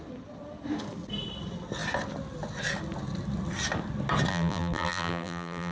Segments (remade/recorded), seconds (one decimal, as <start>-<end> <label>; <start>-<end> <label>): 0.0-4.3 recorded; 4.3-5.7 remade